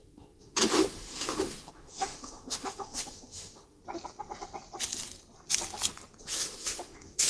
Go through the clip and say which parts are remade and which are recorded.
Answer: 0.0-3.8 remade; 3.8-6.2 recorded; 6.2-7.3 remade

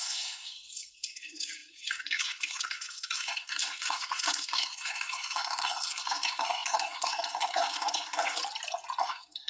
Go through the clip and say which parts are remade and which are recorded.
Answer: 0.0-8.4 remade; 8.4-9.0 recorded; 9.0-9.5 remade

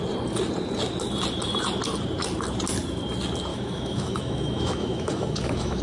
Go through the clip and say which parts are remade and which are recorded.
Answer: 0.0-3.5 recorded; 3.5-5.8 remade

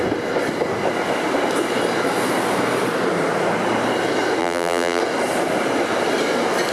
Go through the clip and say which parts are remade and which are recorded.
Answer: 0.0-4.4 recorded; 4.4-5.0 remade; 5.0-6.7 recorded